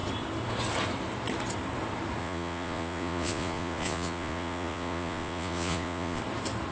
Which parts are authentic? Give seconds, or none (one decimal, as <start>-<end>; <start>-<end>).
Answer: 0.0-2.2; 6.2-6.7